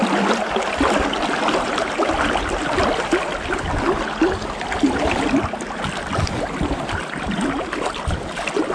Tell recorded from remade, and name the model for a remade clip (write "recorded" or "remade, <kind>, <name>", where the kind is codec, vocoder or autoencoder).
recorded